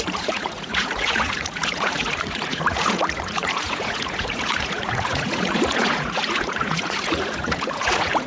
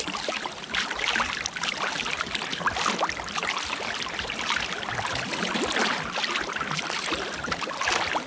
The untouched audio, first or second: second